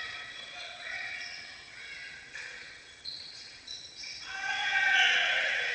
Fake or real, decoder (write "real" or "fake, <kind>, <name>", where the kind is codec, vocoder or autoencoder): fake, vocoder, WaveNeXt